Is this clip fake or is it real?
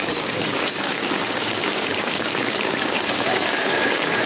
fake